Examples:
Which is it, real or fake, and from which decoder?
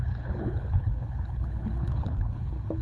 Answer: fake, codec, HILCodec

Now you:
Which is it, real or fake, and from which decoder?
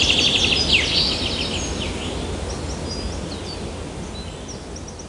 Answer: real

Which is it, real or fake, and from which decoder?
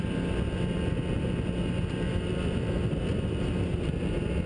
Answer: real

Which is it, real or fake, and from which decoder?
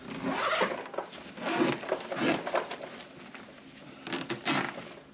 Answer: real